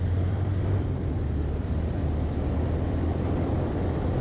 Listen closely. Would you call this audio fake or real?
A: fake